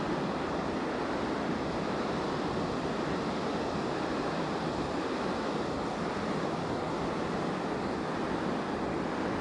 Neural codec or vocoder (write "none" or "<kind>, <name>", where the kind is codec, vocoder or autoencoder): none